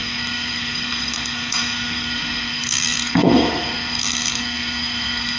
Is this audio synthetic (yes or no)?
yes